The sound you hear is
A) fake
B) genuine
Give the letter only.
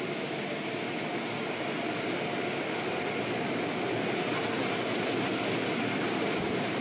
B